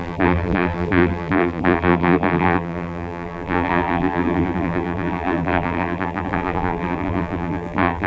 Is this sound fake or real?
fake